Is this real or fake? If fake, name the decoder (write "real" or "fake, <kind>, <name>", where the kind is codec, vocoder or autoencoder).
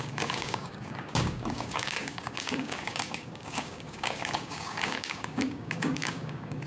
fake, codec, DAC